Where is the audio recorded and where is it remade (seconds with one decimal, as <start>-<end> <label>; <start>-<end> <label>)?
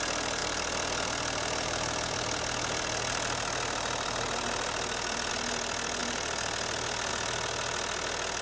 0.0-0.4 recorded; 0.4-5.3 remade; 5.3-6.0 recorded; 6.0-7.1 remade; 7.1-8.4 recorded